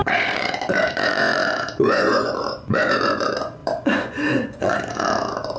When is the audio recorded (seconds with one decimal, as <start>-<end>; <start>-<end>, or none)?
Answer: none

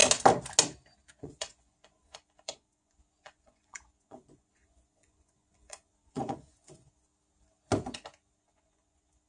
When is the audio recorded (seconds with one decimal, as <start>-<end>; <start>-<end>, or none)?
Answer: 0.0-1.2; 7.1-8.4

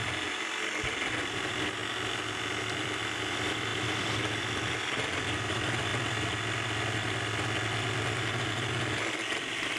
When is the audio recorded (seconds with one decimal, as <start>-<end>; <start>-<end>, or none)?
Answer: 1.8-2.6; 5.9-9.4